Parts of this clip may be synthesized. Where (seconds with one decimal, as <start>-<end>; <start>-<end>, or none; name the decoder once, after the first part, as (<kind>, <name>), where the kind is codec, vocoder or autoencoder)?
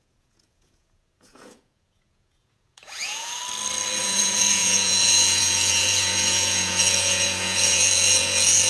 0.0-3.4 (vocoder, Vocos); 4.0-8.7